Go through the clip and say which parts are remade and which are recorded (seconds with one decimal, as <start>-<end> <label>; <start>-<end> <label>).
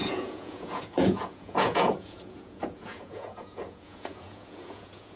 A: 0.0-5.2 remade